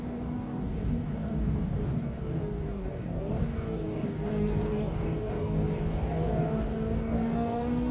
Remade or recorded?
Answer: remade